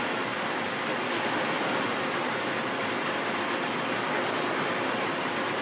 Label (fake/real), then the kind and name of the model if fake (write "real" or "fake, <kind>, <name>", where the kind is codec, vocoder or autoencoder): fake, vocoder, BigVGAN v2